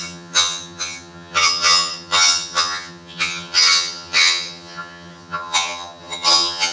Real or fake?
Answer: fake